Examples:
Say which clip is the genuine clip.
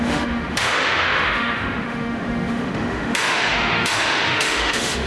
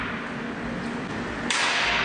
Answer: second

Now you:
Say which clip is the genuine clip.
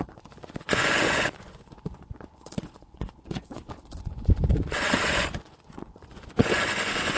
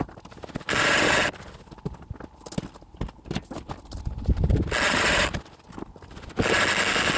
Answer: second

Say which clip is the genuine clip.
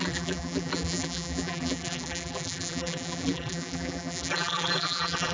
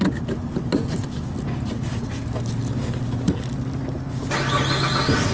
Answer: second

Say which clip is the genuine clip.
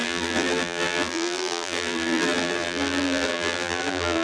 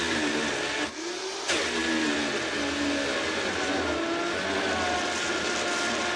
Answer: second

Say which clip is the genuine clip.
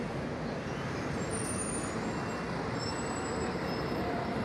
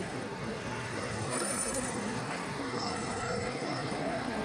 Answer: first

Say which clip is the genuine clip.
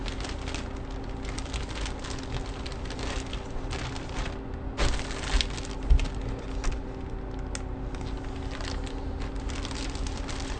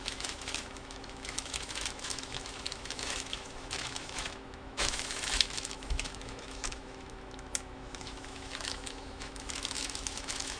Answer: first